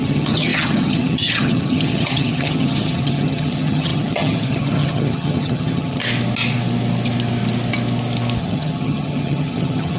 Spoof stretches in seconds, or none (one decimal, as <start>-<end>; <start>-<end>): 0.0-6.0; 8.4-10.0